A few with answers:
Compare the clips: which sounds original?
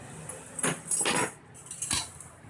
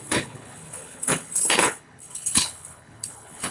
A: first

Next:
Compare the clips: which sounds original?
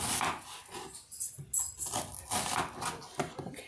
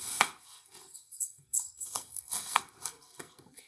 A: first